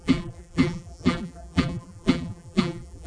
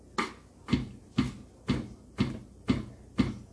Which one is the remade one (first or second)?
first